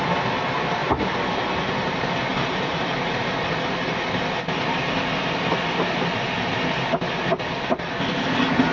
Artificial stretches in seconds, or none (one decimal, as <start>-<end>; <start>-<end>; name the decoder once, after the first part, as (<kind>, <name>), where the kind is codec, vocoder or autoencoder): none